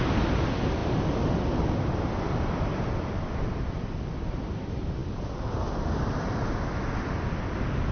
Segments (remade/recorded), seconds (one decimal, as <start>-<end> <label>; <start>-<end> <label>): 0.0-0.8 recorded; 0.8-2.9 remade; 2.9-7.9 recorded